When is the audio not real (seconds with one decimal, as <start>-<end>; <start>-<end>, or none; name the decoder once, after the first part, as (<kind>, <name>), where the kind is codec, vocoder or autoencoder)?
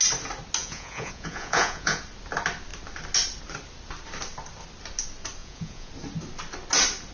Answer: 0.6-2.0 (vocoder, Vocos); 5.4-5.9